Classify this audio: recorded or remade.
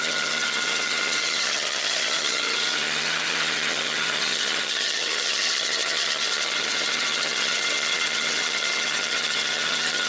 remade